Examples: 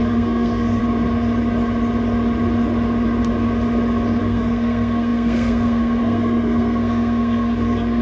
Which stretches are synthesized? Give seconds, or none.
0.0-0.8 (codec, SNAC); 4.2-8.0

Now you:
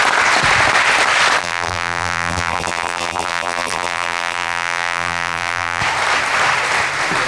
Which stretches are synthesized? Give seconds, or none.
1.4-5.8 (vocoder, BigVGAN v2)

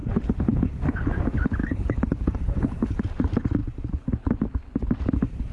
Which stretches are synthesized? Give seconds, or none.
0.0-1.1 (codec, HILCodec); 1.6-3.0

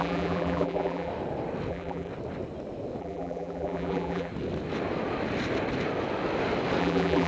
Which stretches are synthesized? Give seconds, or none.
0.0-1.1 (vocoder, BigVGAN v2); 1.7-2.1; 3.0-4.3; 6.8-7.3

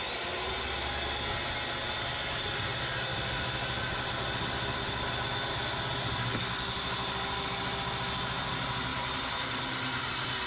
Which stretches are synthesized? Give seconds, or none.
none

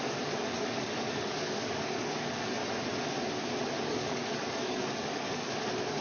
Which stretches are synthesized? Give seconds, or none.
0.0-2.6 (codec, DAC); 3.8-6.0

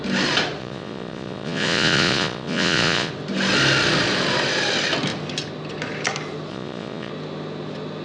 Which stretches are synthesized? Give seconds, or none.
0.6-3.1 (vocoder, Vocos); 6.5-7.1

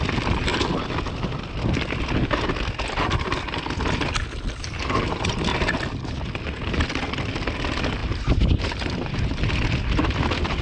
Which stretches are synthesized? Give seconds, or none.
0.5-1.8 (vocoder, BigVGAN v2); 5.5-6.1